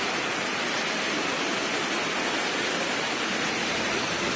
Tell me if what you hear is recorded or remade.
recorded